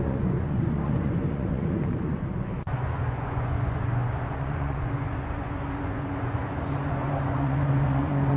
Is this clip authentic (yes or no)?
no